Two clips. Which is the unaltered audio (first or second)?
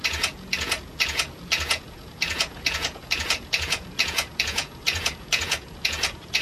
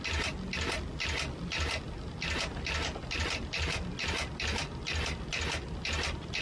second